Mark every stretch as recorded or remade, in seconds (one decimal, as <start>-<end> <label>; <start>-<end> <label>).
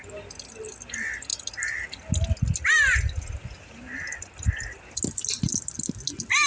0.0-6.5 recorded